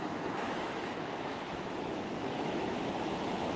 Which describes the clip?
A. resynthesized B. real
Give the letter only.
A